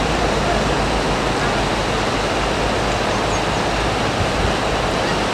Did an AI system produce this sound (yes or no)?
no